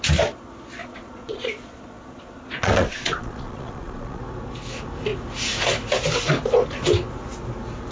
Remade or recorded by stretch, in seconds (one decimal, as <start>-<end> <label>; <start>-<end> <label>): 0.0-0.8 recorded; 0.8-4.2 remade; 4.2-7.9 recorded